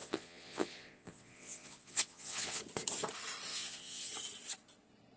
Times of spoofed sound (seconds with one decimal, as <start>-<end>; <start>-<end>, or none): 0.0-2.6; 3.5-4.1